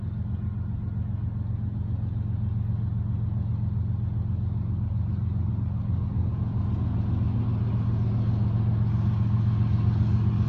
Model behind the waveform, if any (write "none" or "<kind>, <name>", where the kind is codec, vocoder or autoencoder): none